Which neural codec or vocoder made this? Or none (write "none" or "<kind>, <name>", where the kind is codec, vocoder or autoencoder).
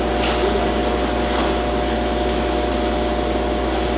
none